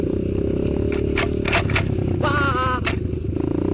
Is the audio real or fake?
real